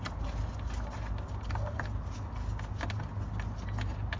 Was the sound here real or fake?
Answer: real